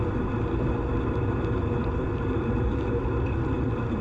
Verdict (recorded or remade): recorded